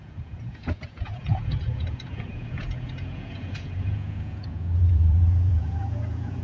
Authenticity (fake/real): fake